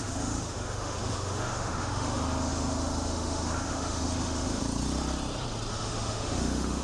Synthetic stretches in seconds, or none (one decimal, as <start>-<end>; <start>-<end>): 0.0-4.6; 5.7-6.8